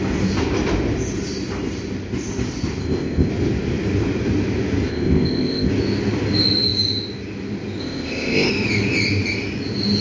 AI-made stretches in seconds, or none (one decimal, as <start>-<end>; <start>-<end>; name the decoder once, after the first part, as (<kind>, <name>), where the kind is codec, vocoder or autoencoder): 2.8-3.3 (codec, ZipCodec); 4.9-5.7; 7.8-8.5